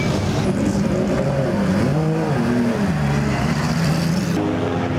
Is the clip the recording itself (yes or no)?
yes